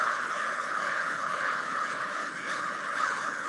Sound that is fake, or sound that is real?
fake